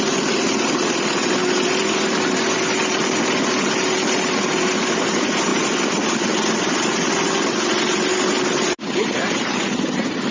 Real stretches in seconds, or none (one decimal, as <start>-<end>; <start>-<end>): 0.0-10.3